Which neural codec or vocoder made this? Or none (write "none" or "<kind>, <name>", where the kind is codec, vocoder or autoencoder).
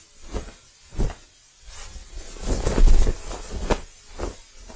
none